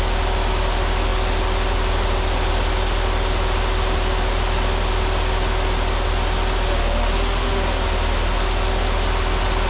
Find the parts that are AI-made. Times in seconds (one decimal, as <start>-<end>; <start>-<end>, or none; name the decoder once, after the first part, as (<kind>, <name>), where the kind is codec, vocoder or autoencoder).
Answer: none